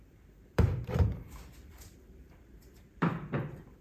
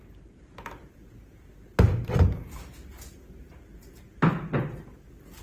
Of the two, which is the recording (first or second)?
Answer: second